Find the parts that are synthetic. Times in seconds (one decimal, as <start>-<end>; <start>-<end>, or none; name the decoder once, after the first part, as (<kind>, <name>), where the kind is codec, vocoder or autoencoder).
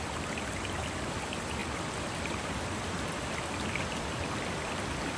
none